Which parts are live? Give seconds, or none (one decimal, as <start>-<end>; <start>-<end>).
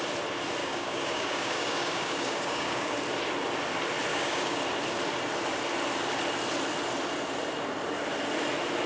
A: 0.0-0.6; 2.9-4.1; 4.6-8.9